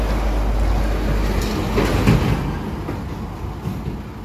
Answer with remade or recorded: recorded